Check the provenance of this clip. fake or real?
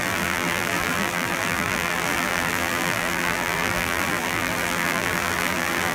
fake